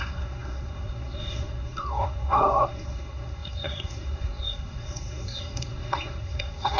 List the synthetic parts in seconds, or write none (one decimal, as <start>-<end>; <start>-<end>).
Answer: 0.0-6.8